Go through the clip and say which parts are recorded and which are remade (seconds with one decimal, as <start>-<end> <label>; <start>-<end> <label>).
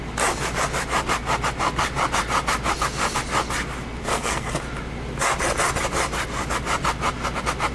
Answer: 0.0-4.0 recorded; 4.0-4.6 remade; 4.6-7.7 recorded